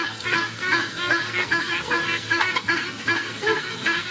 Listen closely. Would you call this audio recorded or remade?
remade